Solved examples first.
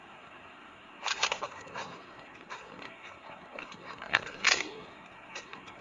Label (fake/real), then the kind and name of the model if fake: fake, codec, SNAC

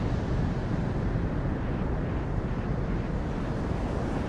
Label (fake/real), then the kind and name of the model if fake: real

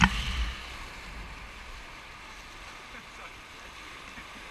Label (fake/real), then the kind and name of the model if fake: real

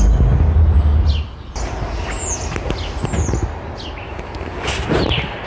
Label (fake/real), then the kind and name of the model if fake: real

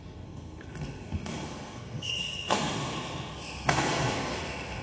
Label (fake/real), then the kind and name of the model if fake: fake, codec, SNAC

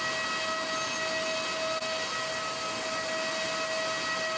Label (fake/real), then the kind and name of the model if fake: real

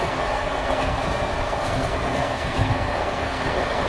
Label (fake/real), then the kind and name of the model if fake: fake, codec, SNAC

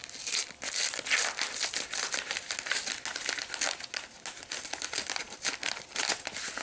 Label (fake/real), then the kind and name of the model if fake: real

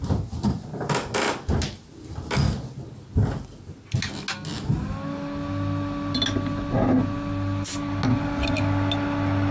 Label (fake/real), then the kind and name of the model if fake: real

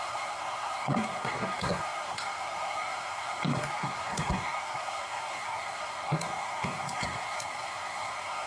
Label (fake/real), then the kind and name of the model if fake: fake, codec, SNAC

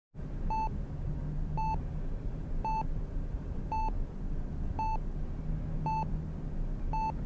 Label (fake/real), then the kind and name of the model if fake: real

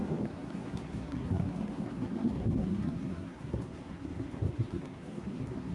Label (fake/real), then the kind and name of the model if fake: fake, codec, SNAC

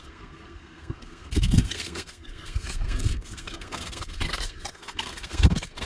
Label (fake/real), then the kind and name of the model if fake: fake, codec, SNAC